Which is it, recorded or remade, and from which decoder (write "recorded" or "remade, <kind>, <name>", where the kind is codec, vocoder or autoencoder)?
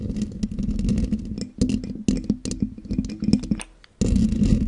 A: recorded